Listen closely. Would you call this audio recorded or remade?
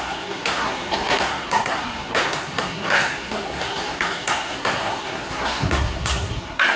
remade